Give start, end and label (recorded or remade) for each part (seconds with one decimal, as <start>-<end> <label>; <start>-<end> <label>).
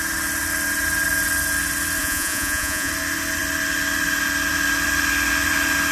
0.0-2.0 recorded; 2.0-2.9 remade; 2.9-5.9 recorded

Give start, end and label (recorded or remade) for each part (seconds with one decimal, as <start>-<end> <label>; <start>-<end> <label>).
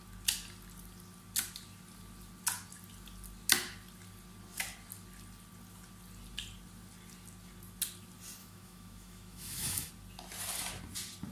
0.0-8.4 recorded; 8.4-9.9 remade; 9.9-11.3 recorded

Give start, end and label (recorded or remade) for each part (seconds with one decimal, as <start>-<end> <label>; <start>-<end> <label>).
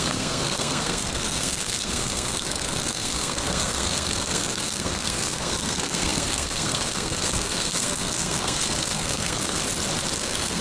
0.0-9.6 remade; 9.6-10.2 recorded; 10.2-10.6 remade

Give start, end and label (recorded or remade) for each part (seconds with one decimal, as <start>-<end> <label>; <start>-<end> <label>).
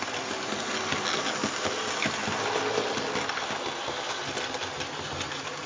0.0-5.7 recorded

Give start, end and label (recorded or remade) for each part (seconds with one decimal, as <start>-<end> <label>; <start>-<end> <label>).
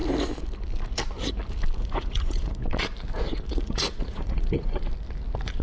0.0-1.8 recorded; 1.8-2.5 remade; 2.5-3.5 recorded; 3.5-4.9 remade; 4.9-5.6 recorded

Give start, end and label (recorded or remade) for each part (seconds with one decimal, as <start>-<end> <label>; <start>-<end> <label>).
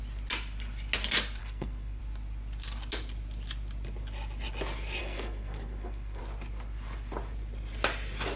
0.0-1.4 recorded; 1.4-2.0 remade; 2.0-5.0 recorded; 5.0-6.2 remade; 6.2-8.4 recorded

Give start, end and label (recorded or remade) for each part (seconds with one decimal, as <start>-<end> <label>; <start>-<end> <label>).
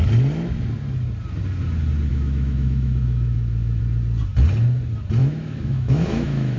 0.0-2.1 recorded; 2.1-3.8 remade; 3.8-5.2 recorded; 5.2-6.6 remade